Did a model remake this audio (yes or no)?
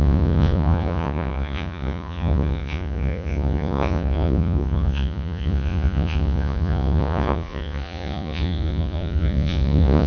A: yes